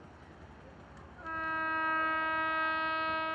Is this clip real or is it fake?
real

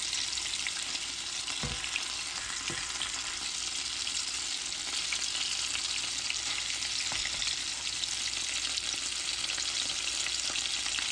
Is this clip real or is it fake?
real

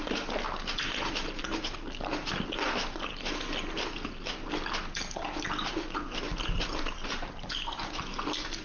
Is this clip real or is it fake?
real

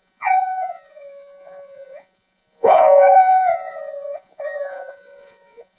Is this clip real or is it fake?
fake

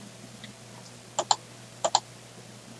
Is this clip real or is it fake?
real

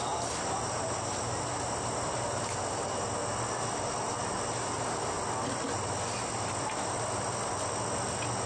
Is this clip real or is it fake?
real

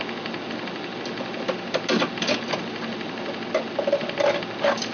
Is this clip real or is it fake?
real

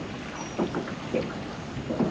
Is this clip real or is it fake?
real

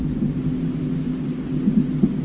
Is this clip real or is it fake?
real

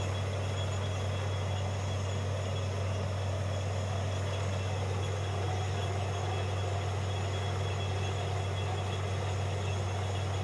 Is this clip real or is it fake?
real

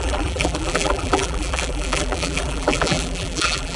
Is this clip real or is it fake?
fake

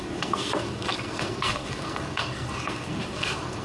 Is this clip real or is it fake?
fake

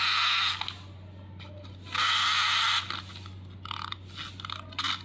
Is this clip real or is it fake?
real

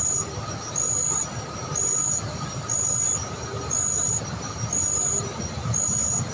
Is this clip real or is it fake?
real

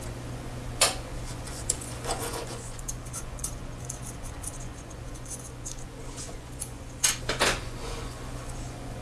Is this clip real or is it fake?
fake